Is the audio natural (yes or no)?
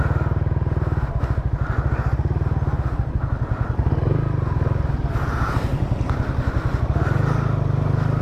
yes